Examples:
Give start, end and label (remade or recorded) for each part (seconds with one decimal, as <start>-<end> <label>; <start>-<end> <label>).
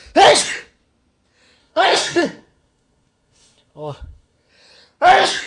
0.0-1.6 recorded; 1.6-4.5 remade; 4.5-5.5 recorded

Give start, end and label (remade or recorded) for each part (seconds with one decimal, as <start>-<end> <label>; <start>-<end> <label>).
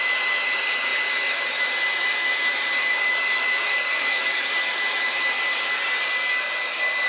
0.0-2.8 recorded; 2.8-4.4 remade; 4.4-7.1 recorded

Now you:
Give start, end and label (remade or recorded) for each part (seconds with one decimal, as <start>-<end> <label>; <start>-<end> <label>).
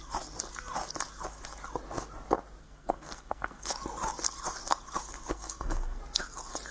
0.0-2.6 recorded; 2.6-3.7 remade; 3.7-5.3 recorded; 5.3-6.0 remade; 6.0-6.7 recorded